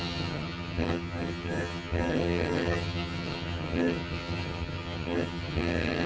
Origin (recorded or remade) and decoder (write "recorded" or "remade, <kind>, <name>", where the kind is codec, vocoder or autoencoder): remade, vocoder, HiFi-GAN